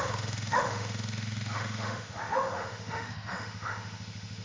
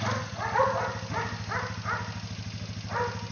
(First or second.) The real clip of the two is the second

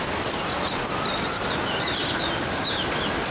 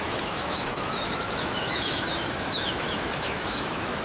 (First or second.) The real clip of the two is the first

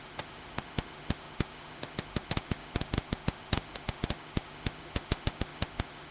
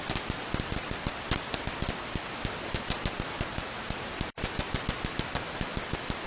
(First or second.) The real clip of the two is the second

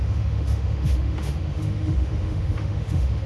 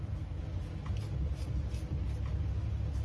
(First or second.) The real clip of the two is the second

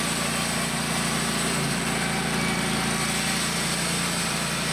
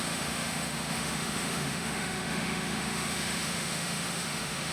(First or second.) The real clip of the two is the first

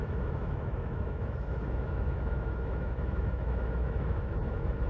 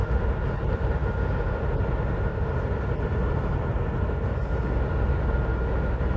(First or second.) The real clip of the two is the second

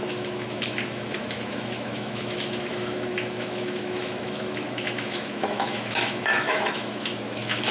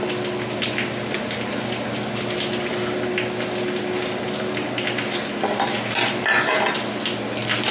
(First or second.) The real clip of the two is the second